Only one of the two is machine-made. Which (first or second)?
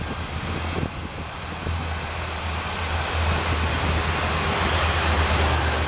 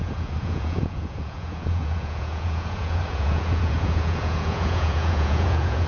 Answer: second